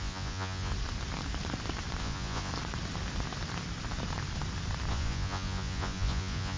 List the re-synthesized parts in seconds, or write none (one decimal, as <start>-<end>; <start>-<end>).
0.0-0.7; 2.0-2.5; 4.9-6.6